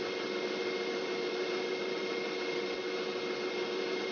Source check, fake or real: real